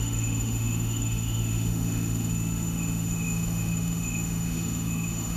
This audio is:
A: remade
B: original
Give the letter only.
A